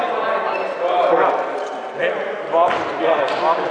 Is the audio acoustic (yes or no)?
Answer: yes